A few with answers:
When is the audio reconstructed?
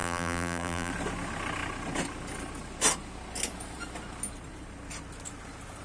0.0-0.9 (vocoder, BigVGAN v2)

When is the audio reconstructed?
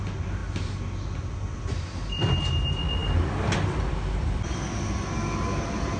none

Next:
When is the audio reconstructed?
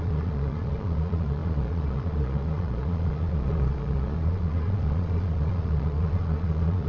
0.0-6.9 (vocoder, Vocos)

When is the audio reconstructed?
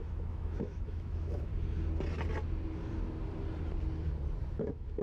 0.0-1.5 (autoencoder, DAC-VAE); 4.5-5.0